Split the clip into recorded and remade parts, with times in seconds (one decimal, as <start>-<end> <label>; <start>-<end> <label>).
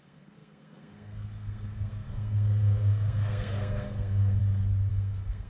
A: 0.0-4.4 remade; 4.4-4.9 recorded; 4.9-5.5 remade